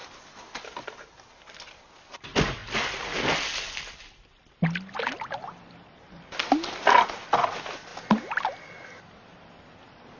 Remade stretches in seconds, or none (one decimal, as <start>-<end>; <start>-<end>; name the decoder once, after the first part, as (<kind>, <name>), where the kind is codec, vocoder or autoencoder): none

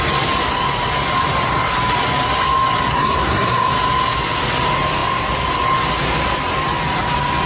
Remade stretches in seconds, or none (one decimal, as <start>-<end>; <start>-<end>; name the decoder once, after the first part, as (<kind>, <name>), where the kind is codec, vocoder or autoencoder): 2.9-3.7 (codec, SNAC)